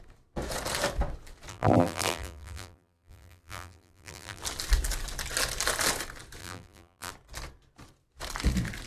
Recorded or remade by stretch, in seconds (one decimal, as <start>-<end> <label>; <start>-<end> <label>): 0.0-1.5 recorded; 1.5-4.4 remade; 4.4-6.4 recorded; 6.4-7.1 remade; 7.1-8.9 recorded